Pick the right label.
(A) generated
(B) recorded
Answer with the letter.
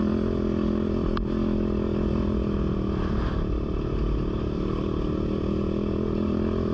B